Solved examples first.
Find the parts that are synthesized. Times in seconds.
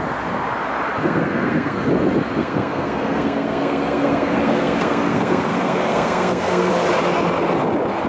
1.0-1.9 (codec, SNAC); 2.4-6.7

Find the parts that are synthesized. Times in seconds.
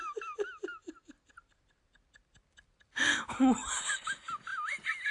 none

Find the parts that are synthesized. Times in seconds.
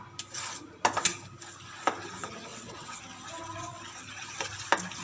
2.5-3.0 (vocoder, WaveNeXt)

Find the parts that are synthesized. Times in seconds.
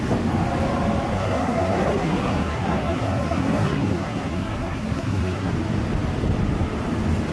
1.1-5.5 (codec, SNAC)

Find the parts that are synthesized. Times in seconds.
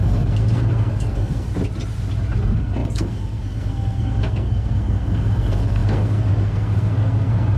0.0-1.5 (codec, SNAC); 2.4-7.6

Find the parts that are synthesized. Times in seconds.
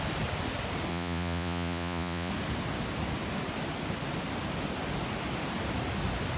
0.9-2.3 (vocoder, Vocos)